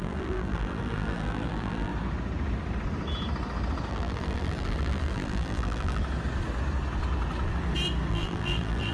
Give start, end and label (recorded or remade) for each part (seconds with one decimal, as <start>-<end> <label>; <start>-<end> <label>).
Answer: 0.0-1.9 remade; 1.9-3.9 recorded; 3.9-6.0 remade; 6.0-8.1 recorded; 8.1-8.9 remade